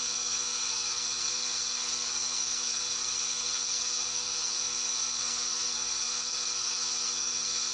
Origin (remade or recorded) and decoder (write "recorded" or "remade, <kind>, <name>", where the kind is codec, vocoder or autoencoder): remade, codec, SNAC